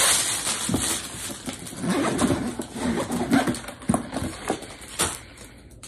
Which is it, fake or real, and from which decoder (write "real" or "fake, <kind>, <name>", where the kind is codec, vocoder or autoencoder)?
real